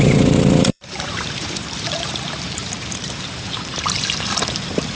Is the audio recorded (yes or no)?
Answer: no